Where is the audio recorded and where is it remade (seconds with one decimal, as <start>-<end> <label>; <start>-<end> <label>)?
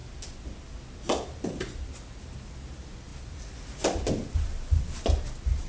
0.0-5.7 recorded